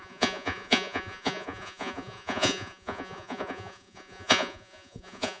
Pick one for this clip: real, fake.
fake